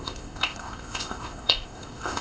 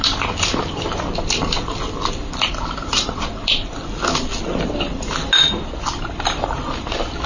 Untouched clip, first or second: second